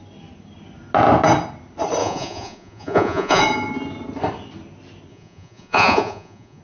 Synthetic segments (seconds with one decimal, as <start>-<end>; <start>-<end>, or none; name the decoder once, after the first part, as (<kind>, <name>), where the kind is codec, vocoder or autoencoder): 2.0-3.4 (vocoder, Vocos); 5.1-6.6